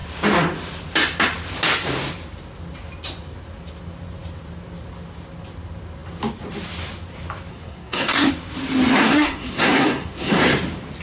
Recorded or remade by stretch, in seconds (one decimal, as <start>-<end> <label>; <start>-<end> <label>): 0.0-7.5 recorded; 7.5-8.3 remade; 8.3-9.0 recorded; 9.0-10.4 remade; 10.4-11.0 recorded